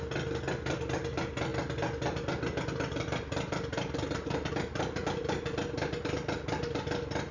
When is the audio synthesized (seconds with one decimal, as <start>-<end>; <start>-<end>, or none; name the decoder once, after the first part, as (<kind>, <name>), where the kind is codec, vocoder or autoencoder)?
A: none

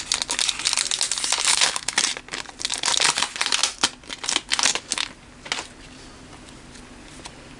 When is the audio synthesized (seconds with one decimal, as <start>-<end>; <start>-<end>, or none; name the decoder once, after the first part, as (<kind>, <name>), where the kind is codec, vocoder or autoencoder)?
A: 1.5-2.0 (codec, SNAC)

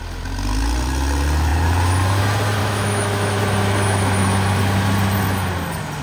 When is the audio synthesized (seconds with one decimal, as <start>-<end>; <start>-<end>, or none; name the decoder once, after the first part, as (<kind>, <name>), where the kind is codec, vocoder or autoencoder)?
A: 2.6-3.4 (autoencoder, DAC-VAE)

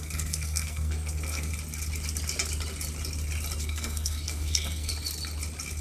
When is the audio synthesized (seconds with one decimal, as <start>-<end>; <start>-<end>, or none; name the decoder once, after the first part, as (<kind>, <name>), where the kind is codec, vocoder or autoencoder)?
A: 0.0-1.5 (codec, SNAC); 3.6-4.9

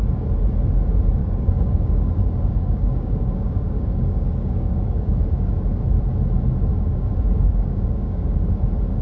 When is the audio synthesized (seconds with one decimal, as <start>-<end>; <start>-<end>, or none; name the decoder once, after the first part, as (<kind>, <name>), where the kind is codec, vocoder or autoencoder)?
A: 1.2-5.5 (codec, DAC); 6.7-8.5

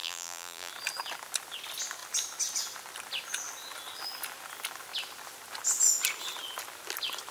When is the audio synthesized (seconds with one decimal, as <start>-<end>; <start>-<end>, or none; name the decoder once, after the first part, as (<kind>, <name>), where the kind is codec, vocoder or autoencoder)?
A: 0.0-0.7 (vocoder, BigVGAN v2)